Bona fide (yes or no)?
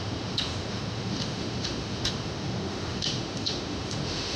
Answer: no